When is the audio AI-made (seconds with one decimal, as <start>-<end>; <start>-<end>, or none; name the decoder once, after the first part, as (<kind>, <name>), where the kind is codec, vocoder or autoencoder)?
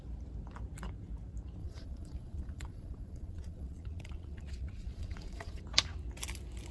1.6-5.6 (vocoder, Vocos)